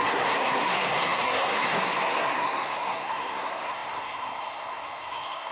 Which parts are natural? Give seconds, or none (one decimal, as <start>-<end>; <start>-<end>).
none